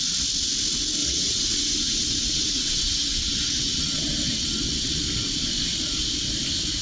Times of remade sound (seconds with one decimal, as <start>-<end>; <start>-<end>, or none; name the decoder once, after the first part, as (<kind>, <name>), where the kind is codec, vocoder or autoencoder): 1.0-5.0 (vocoder, WaveNeXt)